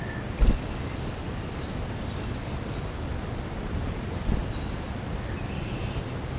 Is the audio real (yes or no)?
yes